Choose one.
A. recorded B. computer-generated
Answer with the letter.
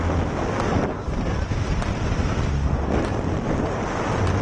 A